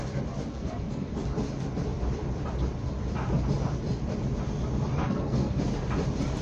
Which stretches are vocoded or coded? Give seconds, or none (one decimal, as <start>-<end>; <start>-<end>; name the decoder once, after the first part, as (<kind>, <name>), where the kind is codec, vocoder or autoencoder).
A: 0.5-1.1 (codec, SNAC); 5.0-5.6